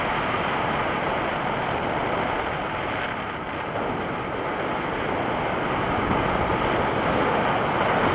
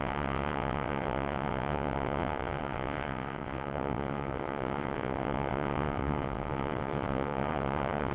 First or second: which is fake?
second